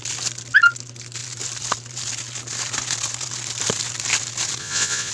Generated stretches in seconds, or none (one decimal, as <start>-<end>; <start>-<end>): 4.6-5.1